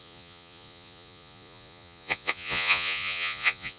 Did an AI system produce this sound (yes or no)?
yes